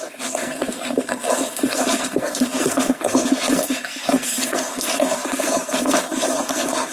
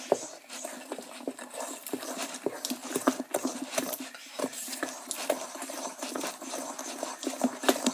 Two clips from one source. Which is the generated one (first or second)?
first